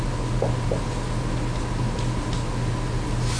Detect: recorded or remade recorded